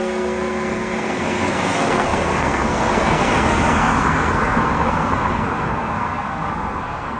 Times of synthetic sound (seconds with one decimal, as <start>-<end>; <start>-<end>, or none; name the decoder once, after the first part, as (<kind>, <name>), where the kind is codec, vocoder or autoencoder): 0.0-7.2 (codec, SNAC)